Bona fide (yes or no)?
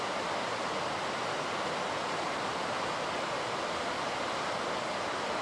yes